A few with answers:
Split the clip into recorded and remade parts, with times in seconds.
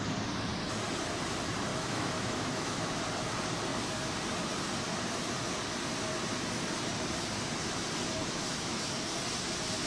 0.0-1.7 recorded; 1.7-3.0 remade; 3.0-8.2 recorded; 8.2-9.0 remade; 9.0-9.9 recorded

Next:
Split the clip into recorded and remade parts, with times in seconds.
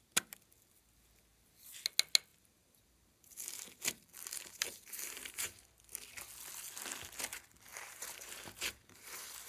0.0-2.3 recorded; 2.3-5.8 remade; 5.8-7.7 recorded; 7.7-9.5 remade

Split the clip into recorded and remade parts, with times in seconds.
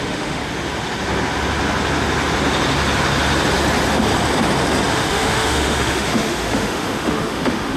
0.0-0.4 remade; 0.4-4.9 recorded; 4.9-7.8 remade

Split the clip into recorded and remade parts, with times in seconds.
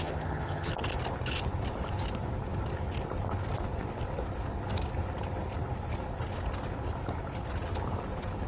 0.0-0.7 remade; 0.7-8.5 recorded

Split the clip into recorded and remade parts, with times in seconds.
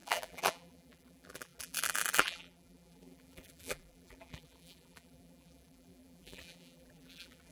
0.0-7.5 remade